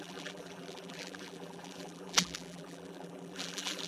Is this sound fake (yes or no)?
yes